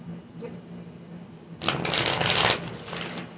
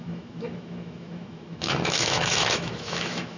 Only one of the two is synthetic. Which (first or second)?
second